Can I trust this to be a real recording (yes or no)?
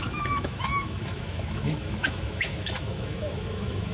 no